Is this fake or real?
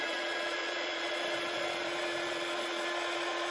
fake